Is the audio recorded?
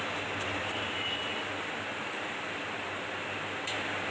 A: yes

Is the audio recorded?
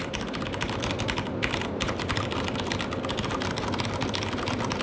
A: yes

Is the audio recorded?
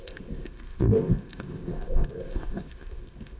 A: no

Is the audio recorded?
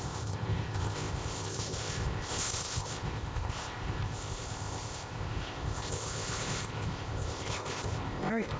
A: no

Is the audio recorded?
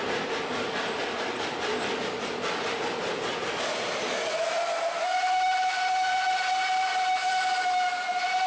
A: yes